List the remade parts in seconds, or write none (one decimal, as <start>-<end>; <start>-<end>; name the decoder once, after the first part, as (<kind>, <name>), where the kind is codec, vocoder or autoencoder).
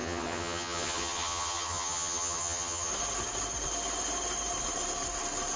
0.0-2.9 (vocoder, HiFi-GAN)